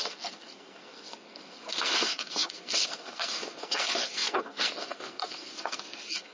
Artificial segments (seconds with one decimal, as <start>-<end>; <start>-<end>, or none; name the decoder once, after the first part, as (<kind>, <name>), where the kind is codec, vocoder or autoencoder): 0.0-6.3 (codec, SNAC)